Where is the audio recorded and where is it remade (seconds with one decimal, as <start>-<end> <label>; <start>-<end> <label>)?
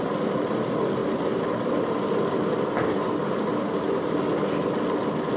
0.0-5.4 recorded